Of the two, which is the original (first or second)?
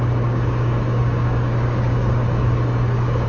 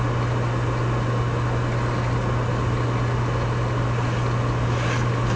second